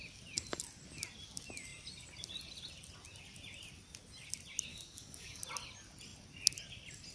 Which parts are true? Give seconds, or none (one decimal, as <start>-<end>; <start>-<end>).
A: 0.0-4.7; 5.4-7.1